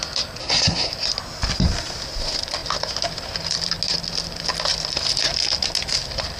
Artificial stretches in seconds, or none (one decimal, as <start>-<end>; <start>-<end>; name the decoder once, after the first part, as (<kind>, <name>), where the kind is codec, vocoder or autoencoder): 0.4-0.9 (codec, SNAC)

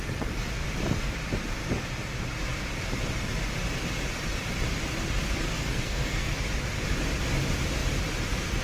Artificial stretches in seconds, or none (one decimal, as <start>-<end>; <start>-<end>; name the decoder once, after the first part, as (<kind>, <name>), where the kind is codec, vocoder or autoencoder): 5.5-6.3 (codec, SNAC)

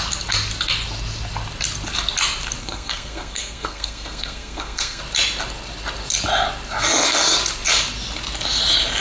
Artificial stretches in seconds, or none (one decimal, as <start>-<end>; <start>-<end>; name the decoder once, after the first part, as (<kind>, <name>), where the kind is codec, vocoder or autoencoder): 2.6-5.0 (codec, SNAC)

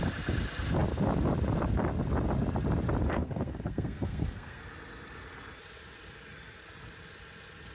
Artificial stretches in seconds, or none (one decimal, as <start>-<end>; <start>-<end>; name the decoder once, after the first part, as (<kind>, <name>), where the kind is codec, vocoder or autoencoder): 3.1-4.6 (codec, SNAC)

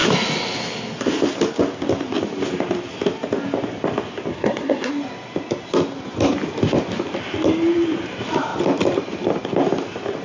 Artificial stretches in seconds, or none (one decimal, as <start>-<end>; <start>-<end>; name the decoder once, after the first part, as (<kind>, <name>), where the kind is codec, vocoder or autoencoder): 4.3-4.9 (codec, SNAC)